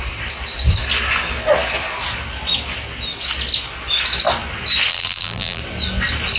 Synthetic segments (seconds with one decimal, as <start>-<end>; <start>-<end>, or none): 4.9-5.6